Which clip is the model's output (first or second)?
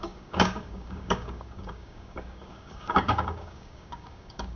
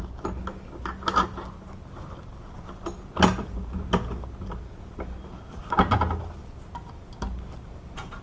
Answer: first